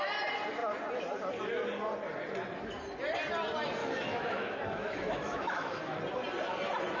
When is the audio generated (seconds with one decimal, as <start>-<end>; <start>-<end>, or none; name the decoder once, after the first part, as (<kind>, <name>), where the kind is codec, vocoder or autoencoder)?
3.8-6.0 (autoencoder, DAC-VAE)